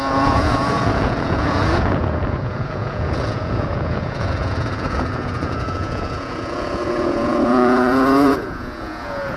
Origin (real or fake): fake